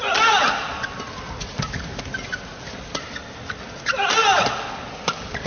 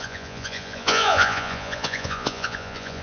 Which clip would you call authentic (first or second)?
first